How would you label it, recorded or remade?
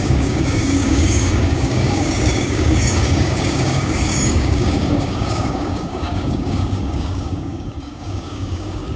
remade